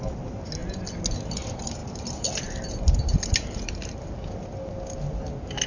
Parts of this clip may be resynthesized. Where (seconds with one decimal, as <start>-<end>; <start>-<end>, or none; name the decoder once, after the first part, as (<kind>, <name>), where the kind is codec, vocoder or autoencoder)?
none